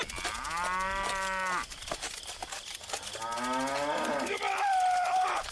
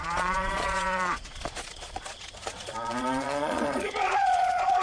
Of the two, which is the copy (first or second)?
second